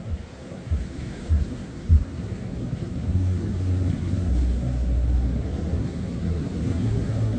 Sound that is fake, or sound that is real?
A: fake